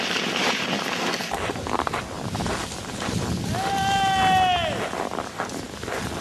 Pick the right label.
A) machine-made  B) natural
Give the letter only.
B